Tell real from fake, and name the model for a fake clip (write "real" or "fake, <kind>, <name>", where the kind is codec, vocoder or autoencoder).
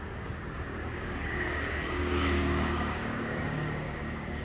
fake, codec, DAC